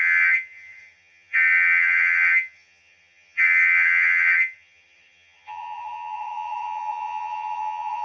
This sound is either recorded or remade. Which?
remade